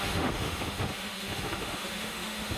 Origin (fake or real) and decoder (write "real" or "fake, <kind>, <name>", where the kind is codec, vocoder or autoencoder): fake, autoencoder, DAC-VAE